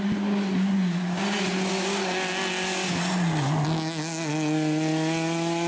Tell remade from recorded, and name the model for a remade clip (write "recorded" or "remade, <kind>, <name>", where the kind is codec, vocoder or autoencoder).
recorded